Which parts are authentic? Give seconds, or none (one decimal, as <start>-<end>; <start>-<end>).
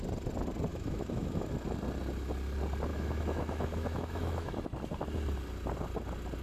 0.0-0.7; 1.5-2.9; 4.5-6.4